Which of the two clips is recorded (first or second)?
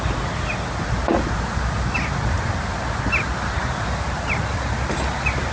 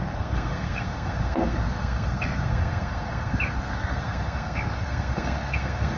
first